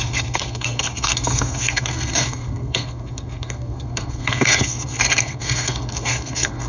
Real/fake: fake